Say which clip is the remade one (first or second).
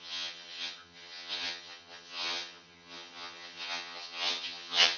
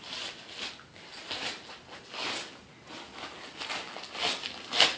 first